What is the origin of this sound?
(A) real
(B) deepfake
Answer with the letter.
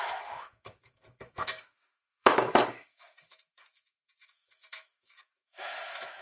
B